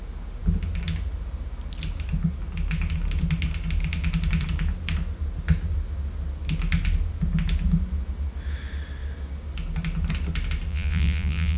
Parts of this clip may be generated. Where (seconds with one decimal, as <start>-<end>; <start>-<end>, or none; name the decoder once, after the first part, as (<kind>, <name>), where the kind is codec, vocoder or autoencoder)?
10.7-11.6 (vocoder, Vocos)